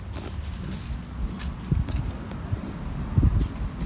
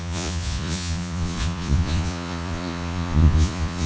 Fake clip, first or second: second